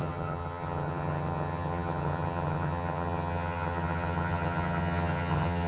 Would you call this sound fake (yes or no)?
yes